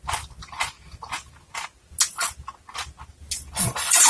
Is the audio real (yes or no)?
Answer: yes